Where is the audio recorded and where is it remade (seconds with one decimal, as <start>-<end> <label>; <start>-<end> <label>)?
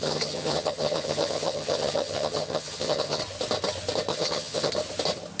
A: 0.0-3.2 remade; 3.2-4.1 recorded; 4.1-4.7 remade; 4.7-5.4 recorded